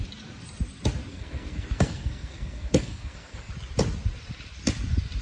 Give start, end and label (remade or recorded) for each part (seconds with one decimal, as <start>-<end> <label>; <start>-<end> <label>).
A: 0.0-1.1 recorded; 1.1-3.5 remade; 3.5-5.2 recorded